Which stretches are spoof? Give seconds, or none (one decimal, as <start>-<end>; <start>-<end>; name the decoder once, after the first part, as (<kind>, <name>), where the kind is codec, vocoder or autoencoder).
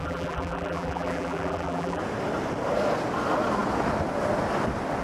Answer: 0.0-2.0 (vocoder, BigVGAN v2)